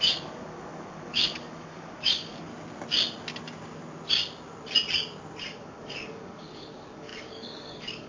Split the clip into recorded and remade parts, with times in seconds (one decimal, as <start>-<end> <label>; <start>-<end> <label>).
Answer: 0.0-2.5 remade; 2.5-5.4 recorded; 5.4-8.1 remade